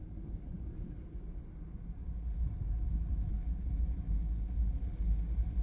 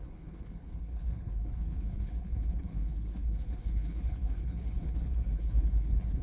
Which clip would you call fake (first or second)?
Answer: second